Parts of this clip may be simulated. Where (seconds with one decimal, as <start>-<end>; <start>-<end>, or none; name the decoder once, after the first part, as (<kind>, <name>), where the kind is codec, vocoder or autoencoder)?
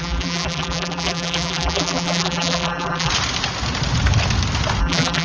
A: 0.0-3.1 (vocoder, BigVGAN v2); 4.8-5.2